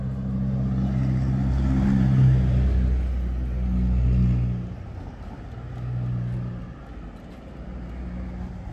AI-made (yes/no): no